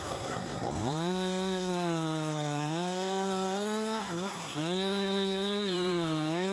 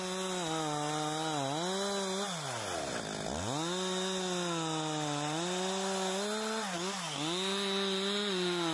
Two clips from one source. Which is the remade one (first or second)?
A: first